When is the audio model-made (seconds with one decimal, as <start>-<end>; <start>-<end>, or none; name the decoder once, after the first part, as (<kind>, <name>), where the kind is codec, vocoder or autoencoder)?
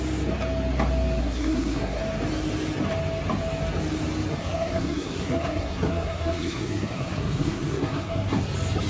1.2-2.0 (codec, SNAC); 4.4-8.4